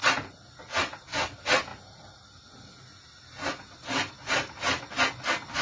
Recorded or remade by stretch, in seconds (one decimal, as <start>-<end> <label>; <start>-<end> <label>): 0.0-5.6 recorded